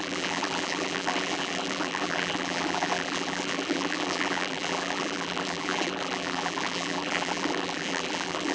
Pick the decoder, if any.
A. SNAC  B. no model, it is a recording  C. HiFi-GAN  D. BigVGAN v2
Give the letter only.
D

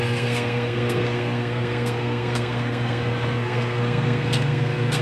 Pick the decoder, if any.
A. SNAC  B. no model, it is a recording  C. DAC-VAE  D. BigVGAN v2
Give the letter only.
A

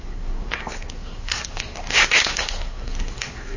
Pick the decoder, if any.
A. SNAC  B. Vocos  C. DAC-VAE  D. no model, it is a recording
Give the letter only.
A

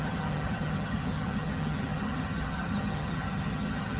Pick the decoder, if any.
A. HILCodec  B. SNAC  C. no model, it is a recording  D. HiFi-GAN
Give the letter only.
D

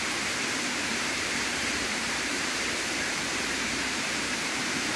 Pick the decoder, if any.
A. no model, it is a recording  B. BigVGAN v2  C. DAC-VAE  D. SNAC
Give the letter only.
B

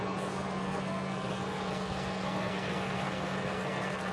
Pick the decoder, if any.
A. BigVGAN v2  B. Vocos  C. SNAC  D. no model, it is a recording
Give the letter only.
C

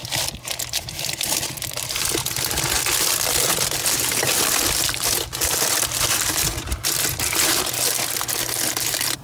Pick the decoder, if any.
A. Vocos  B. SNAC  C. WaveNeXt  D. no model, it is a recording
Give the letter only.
D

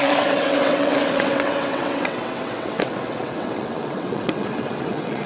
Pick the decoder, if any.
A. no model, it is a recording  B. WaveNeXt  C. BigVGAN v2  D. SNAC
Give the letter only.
B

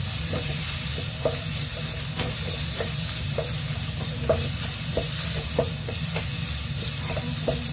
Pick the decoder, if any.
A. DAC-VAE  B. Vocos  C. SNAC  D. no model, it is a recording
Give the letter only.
D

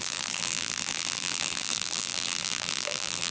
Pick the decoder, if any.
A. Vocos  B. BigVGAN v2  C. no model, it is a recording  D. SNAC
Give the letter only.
B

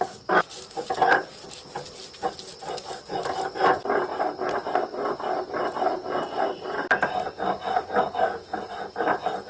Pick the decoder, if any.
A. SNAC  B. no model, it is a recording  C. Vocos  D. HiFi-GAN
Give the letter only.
B